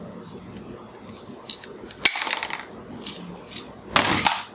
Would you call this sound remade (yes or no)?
no